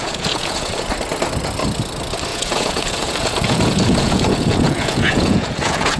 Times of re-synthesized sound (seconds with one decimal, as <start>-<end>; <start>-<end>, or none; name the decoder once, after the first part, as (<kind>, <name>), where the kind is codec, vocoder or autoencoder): 0.0-0.9 (vocoder, Vocos); 2.3-6.0